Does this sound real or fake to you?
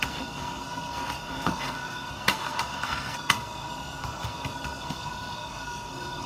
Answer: fake